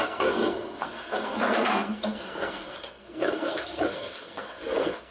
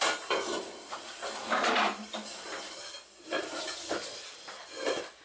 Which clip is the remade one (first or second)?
first